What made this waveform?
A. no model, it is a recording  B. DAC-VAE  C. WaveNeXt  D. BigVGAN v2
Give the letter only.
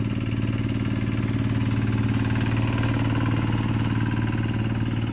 A